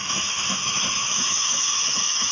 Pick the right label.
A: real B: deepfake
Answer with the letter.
B